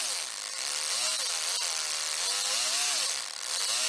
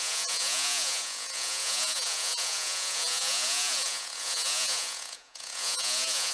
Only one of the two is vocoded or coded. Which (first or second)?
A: second